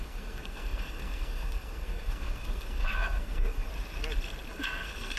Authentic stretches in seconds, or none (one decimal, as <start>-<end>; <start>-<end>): 3.7-4.5